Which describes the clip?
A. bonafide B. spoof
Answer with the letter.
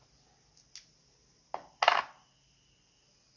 A